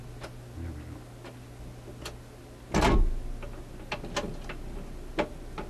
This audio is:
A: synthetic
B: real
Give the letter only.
B